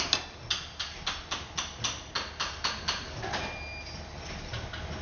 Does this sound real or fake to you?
real